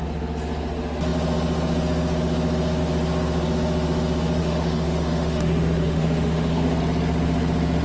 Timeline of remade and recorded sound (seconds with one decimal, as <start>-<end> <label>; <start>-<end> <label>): 0.0-4.4 recorded; 4.4-6.8 remade; 6.8-7.8 recorded